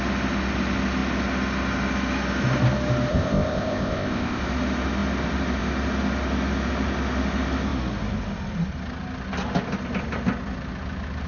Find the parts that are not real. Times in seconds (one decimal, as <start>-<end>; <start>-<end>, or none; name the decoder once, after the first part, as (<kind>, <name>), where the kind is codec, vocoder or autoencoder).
3.1-4.4 (codec, ZipCodec)